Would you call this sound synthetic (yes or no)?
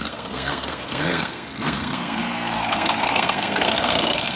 yes